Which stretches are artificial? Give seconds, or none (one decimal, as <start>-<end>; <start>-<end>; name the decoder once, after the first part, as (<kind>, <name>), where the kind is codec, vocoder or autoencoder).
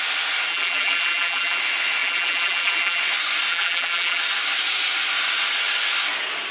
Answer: 0.5-1.6 (vocoder, BigVGAN v2); 2.0-3.0; 3.5-4.2